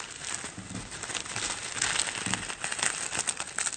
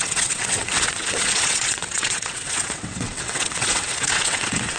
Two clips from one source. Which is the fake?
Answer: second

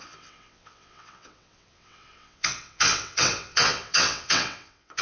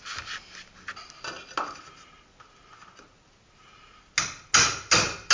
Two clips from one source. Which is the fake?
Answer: first